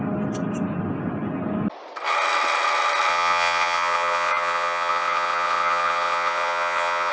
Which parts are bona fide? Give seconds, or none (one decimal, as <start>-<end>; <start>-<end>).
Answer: 0.0-3.1